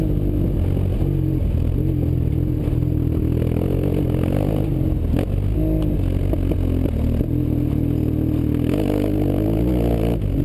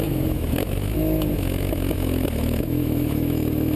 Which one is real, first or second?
first